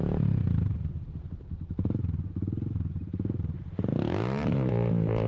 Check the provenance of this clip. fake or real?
fake